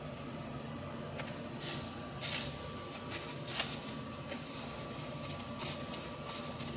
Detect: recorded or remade recorded